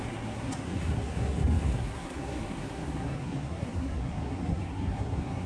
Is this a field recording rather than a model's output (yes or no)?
no